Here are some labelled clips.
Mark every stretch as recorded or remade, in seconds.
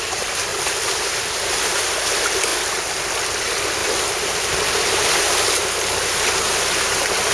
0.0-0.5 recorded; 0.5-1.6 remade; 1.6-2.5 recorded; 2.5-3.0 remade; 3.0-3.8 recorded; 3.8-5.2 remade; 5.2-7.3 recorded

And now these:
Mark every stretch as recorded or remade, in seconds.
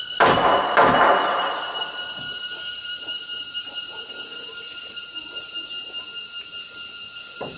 0.0-3.3 remade; 3.3-7.6 recorded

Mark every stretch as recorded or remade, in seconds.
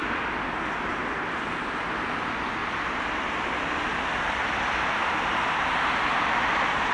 0.0-2.6 recorded; 2.6-5.6 remade; 5.6-6.9 recorded